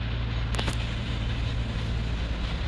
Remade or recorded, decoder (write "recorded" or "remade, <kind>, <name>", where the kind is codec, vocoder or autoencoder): recorded